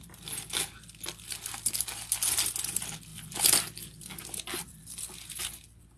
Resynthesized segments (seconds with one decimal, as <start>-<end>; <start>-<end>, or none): none